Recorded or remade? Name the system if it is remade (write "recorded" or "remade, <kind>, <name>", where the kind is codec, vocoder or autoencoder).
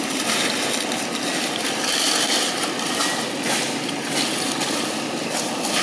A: recorded